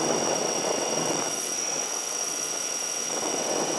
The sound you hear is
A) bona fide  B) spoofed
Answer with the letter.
B